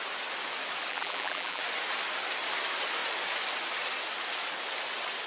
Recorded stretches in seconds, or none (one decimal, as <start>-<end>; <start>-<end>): 0.0-0.9; 1.6-5.3

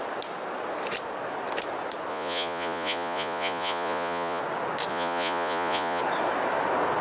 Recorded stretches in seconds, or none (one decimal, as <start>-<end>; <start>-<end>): 0.0-2.1; 4.4-4.9; 6.0-7.0

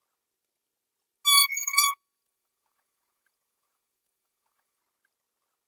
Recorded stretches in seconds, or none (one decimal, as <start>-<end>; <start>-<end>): 0.0-1.4; 4.8-5.7

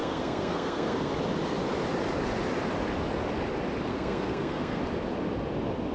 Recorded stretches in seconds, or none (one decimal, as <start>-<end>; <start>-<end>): 1.1-3.9; 4.8-5.9

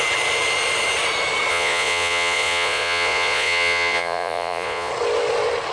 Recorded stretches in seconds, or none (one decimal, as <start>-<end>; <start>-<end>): 0.0-1.5; 4.9-5.7

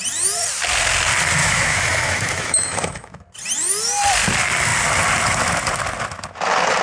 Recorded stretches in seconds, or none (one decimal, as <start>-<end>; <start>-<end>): 0.0-1.4; 3.2-6.8

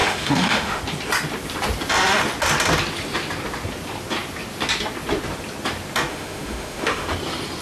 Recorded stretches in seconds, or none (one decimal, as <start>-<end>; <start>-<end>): 0.8-6.1; 7.1-7.6

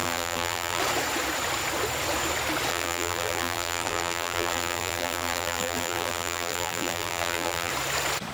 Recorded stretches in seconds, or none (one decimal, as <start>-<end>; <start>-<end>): 0.8-2.7; 7.7-8.3